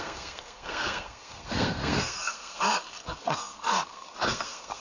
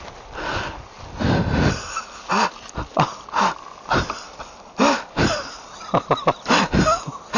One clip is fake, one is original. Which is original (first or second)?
second